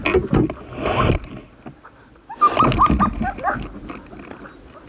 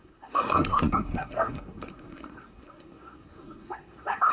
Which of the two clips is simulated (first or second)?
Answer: second